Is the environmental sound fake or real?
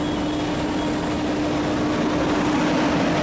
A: real